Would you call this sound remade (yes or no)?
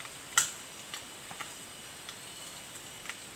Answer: no